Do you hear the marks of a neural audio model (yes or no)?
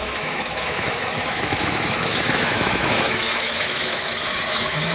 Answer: yes